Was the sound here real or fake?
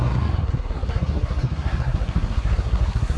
fake